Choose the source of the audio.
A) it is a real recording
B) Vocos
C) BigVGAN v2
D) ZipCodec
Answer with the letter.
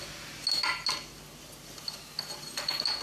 A